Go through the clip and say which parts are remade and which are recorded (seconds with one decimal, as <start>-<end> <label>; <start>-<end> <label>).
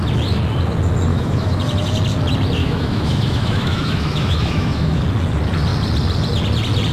0.0-1.1 recorded; 1.1-1.6 remade; 1.6-2.6 recorded; 2.6-5.0 remade; 5.0-6.9 recorded